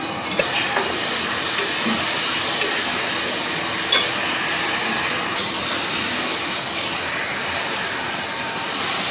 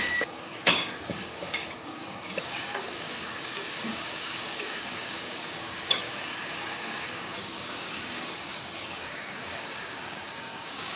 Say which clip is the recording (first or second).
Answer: first